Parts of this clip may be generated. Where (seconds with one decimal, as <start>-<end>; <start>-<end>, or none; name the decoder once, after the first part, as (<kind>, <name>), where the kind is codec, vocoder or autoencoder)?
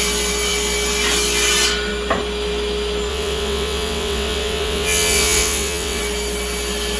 3.1-6.0 (vocoder, WaveNeXt)